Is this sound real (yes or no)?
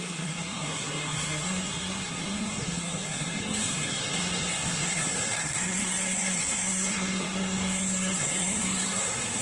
no